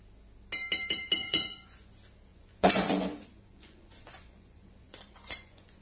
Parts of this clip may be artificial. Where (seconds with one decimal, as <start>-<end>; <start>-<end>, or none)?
1.2-1.9; 2.3-5.8